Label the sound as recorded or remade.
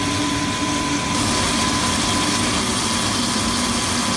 recorded